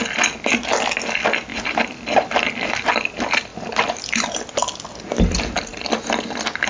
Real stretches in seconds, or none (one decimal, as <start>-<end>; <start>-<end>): 0.0-1.5; 2.7-3.5; 4.0-5.7; 6.3-6.7